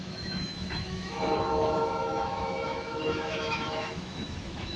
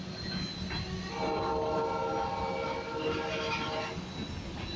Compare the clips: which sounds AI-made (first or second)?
first